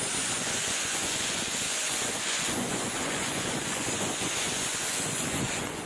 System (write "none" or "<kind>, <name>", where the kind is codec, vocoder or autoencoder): vocoder, Vocos